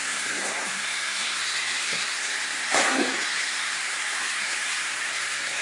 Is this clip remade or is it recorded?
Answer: remade